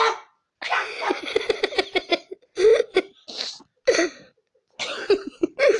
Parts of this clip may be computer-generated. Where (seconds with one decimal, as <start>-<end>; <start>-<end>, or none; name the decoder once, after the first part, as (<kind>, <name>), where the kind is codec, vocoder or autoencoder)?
none